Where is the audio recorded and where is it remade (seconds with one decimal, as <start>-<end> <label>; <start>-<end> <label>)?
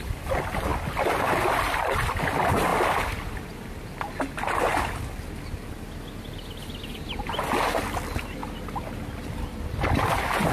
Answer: 0.0-0.7 remade; 0.7-1.4 recorded; 1.4-2.7 remade; 2.7-6.8 recorded; 6.8-10.5 remade